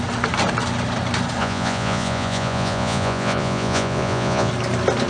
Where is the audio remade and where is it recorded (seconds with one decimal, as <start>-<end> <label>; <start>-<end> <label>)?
0.0-1.4 recorded; 1.4-4.5 remade; 4.5-5.1 recorded